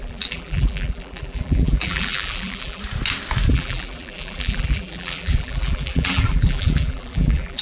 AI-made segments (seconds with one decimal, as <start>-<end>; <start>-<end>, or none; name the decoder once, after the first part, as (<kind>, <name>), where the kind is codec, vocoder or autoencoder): 0.0-2.8 (vocoder, BigVGAN v2); 3.5-7.6

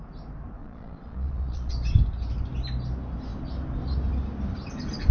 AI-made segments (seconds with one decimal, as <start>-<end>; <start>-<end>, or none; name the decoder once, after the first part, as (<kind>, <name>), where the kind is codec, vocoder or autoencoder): 0.6-1.7 (vocoder, Vocos)

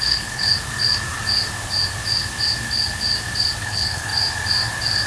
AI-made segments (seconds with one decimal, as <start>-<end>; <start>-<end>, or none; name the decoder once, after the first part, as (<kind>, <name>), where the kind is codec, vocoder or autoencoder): 0.0-0.5 (codec, HILCodec); 3.6-4.1

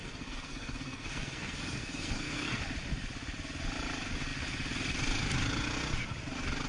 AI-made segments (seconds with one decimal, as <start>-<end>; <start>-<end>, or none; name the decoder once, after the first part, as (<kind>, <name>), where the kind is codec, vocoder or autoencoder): 0.0-2.6 (codec, SNAC)

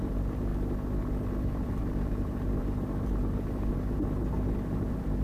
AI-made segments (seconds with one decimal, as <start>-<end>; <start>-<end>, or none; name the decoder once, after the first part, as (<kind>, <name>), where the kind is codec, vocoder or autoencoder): 0.0-0.5 (vocoder, BigVGAN v2); 1.4-5.2

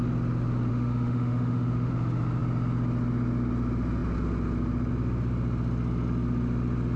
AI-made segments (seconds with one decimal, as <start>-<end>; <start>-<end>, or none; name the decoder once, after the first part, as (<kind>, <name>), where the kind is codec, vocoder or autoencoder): 0.7-1.9 (autoencoder, DAC-VAE)